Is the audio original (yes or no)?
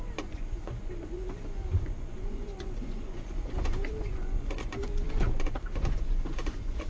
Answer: no